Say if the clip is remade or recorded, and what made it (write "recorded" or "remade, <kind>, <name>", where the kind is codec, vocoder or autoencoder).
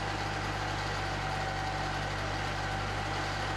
recorded